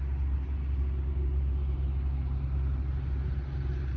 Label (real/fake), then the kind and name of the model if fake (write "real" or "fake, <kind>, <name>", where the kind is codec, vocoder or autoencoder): real